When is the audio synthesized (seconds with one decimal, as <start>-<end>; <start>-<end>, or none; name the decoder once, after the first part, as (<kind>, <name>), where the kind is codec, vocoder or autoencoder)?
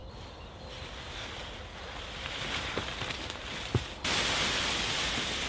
0.0-3.3 (vocoder, BigVGAN v2)